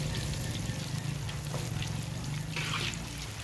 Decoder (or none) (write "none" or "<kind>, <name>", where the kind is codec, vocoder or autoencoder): none